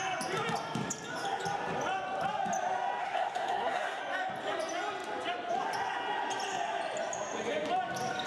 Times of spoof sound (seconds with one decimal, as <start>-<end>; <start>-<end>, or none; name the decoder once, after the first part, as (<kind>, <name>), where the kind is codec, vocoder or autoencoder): 3.0-4.0 (codec, SNAC)